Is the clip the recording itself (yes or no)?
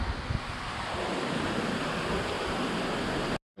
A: yes